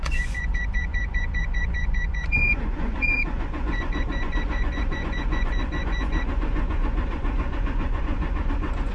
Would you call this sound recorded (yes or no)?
no